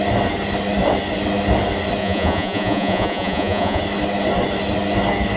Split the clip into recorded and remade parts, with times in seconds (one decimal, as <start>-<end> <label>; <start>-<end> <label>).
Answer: 0.0-2.0 recorded; 2.0-3.8 remade; 3.8-5.4 recorded